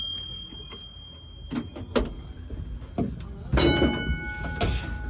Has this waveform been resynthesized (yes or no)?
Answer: no